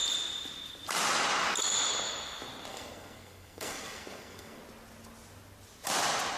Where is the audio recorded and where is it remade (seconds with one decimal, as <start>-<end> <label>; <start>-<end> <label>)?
0.0-2.7 recorded; 2.7-4.6 remade; 4.6-6.4 recorded